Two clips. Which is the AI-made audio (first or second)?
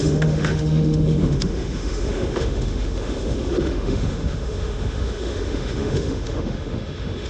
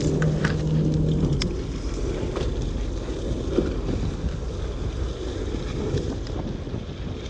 first